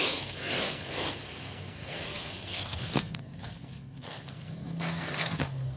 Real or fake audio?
fake